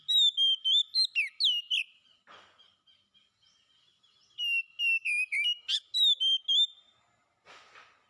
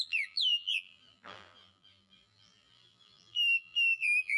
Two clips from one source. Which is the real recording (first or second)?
first